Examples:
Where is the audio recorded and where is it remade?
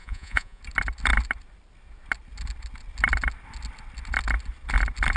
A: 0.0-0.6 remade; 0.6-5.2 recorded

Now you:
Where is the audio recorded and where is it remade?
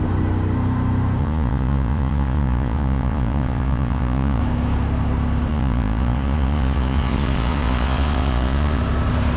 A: 0.0-1.2 recorded; 1.2-4.4 remade; 4.4-5.5 recorded; 5.5-8.8 remade; 8.8-9.4 recorded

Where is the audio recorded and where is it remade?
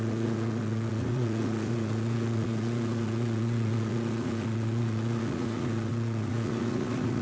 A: 0.0-7.2 remade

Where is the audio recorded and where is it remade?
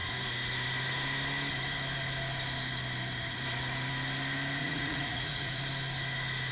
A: 0.0-4.6 recorded; 4.6-5.6 remade; 5.6-6.5 recorded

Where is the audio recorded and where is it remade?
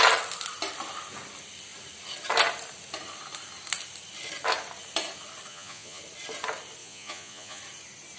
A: 0.0-5.5 recorded; 5.5-6.0 remade; 6.0-6.8 recorded; 6.8-7.6 remade; 7.6-8.2 recorded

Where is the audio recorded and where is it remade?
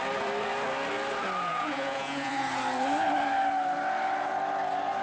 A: 0.0-1.5 recorded; 1.5-2.3 remade; 2.3-5.0 recorded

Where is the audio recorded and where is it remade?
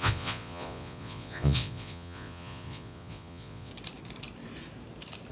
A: 0.0-3.7 remade; 3.7-5.3 recorded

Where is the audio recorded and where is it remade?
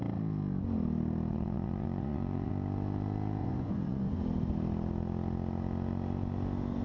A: 0.0-1.3 recorded; 1.3-2.5 remade; 2.5-3.4 recorded; 3.4-4.2 remade; 4.2-6.8 recorded